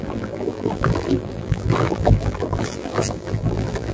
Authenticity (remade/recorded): remade